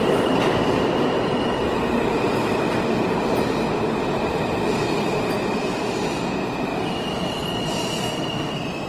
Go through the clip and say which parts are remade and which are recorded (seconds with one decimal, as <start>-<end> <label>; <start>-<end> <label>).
0.0-4.0 recorded; 4.0-4.6 remade; 4.6-6.7 recorded; 6.7-7.3 remade; 7.3-8.9 recorded